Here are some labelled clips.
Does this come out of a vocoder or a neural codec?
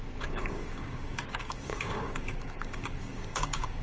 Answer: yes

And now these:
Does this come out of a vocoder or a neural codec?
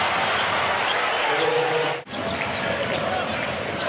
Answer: no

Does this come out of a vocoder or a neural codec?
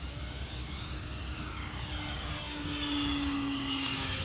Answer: yes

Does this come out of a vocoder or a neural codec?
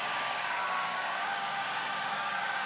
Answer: yes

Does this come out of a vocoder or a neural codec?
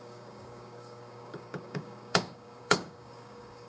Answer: yes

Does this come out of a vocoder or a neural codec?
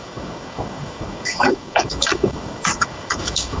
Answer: yes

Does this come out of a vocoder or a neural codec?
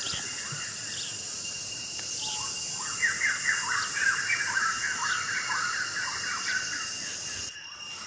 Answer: no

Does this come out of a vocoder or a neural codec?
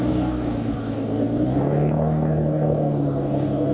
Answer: yes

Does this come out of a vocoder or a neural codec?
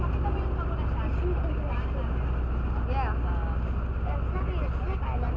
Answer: no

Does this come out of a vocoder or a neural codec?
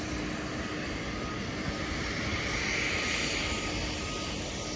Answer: no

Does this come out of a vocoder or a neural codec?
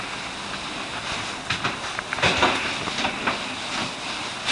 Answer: no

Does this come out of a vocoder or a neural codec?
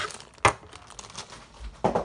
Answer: no